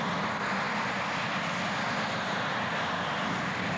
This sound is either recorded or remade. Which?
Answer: recorded